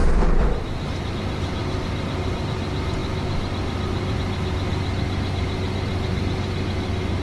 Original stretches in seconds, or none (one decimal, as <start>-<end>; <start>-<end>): 1.1-1.6; 2.6-3.0; 4.2-7.2